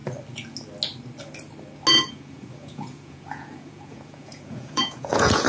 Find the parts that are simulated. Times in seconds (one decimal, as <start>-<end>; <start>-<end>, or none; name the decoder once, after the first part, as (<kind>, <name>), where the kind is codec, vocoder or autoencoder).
2.1-5.5 (vocoder, Vocos)